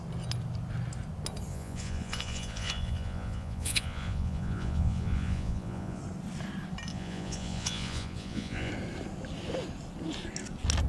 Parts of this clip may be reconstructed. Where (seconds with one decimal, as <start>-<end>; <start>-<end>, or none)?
1.5-6.0; 6.9-8.7